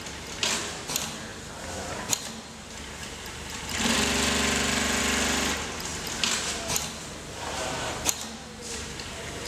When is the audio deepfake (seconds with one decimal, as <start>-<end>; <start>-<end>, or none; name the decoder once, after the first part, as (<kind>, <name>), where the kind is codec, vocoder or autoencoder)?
1.3-5.0 (vocoder, BigVGAN v2)